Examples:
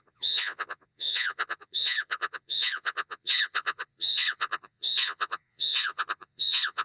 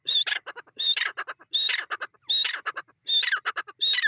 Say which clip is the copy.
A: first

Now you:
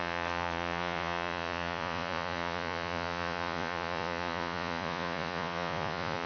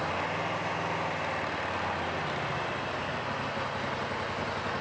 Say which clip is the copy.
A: first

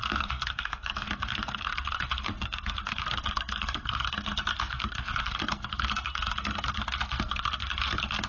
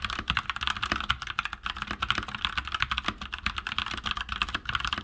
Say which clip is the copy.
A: first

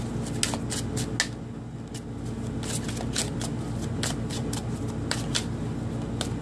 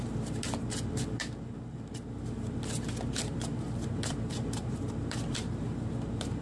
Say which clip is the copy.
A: second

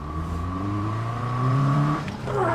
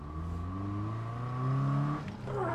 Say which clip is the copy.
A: first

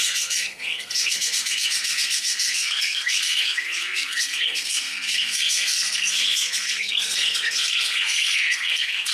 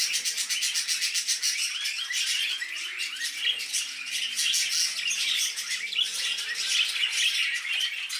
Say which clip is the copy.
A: first